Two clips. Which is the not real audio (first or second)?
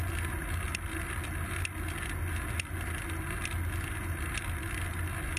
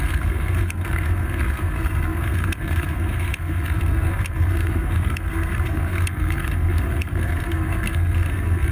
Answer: second